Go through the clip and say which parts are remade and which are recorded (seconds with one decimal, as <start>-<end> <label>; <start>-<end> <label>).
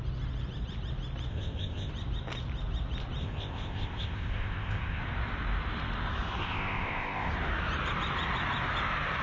0.0-1.3 recorded; 1.3-1.9 remade; 1.9-3.2 recorded; 3.2-5.0 remade; 5.0-6.4 recorded; 6.4-7.3 remade; 7.3-9.2 recorded